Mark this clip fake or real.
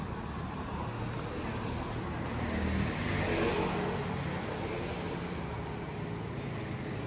real